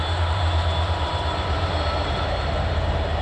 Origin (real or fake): fake